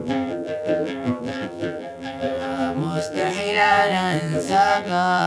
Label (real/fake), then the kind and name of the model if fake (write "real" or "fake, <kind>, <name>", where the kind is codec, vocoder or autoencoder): fake, vocoder, BigVGAN v2